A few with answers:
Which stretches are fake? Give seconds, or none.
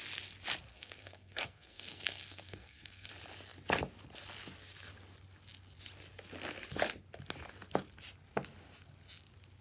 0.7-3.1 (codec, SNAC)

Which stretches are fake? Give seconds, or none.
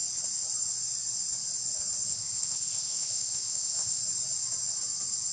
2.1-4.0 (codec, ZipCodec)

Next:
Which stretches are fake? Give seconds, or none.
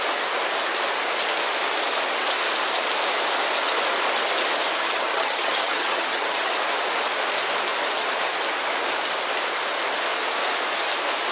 4.8-6.5 (vocoder, HiFi-GAN)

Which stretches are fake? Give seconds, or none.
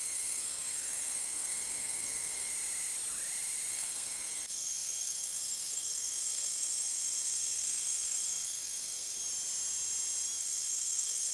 0.0-2.5 (codec, SNAC); 3.7-9.2; 10.4-11.3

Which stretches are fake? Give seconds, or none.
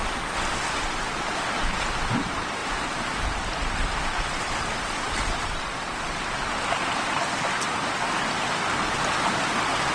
none